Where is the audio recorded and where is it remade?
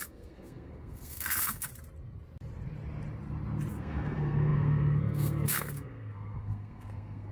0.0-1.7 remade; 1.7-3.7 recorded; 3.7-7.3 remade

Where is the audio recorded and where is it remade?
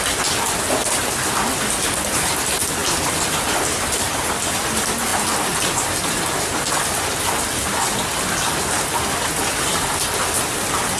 0.0-11.0 recorded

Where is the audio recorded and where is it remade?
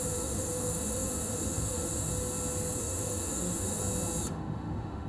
0.0-2.1 remade; 2.1-2.8 recorded; 2.8-3.8 remade; 3.8-4.3 recorded; 4.3-5.1 remade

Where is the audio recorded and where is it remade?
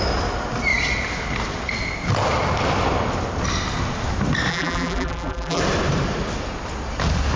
0.0-4.5 recorded; 4.5-5.6 remade; 5.6-7.4 recorded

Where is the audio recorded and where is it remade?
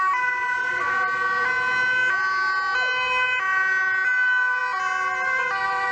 0.0-5.9 recorded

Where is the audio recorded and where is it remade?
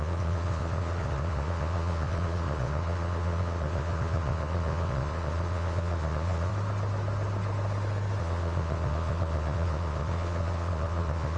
0.0-6.5 remade; 6.5-8.2 recorded; 8.2-11.4 remade